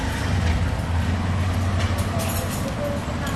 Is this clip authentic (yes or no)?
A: yes